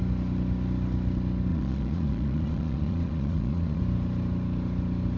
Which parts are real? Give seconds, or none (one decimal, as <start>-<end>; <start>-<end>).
0.0-1.5; 3.8-5.2